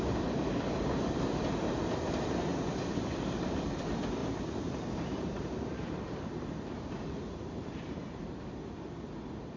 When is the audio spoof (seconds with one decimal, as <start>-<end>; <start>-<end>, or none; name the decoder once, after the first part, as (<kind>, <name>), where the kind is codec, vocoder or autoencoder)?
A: 1.0-1.9 (vocoder, BigVGAN v2); 2.5-3.6; 4.2-8.4